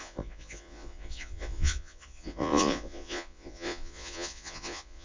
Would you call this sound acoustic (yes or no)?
no